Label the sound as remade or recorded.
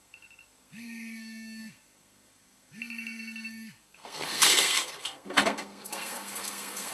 remade